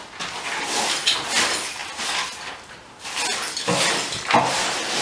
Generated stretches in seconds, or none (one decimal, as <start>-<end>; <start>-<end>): none